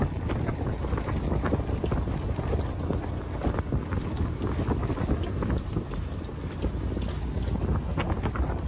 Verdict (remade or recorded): recorded